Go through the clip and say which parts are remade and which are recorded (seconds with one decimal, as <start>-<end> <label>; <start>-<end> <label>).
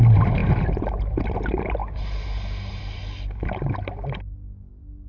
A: 0.0-5.1 recorded